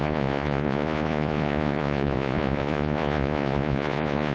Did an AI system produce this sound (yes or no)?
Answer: yes